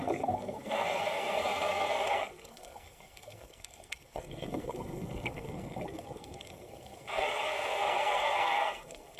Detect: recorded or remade remade